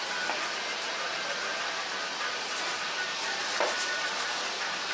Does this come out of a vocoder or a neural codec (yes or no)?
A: no